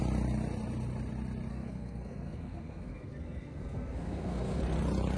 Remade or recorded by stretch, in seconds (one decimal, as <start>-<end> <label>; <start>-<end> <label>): 0.0-1.5 recorded; 1.5-4.6 remade; 4.6-5.2 recorded